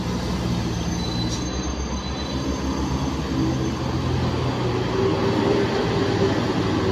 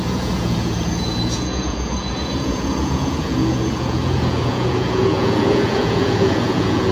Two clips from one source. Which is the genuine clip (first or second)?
first